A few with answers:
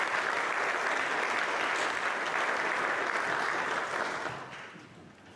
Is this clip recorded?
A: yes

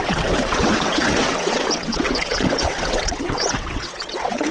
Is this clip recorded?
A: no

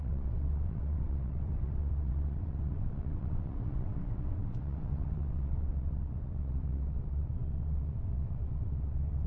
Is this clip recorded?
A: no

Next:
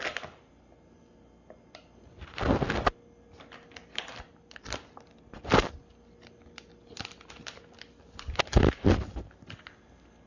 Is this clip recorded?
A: yes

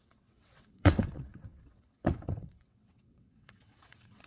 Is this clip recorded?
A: no